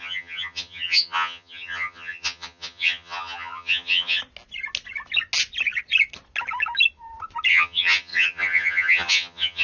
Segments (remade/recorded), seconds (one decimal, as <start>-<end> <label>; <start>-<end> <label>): 0.0-4.2 remade; 4.2-7.5 recorded; 7.5-9.6 remade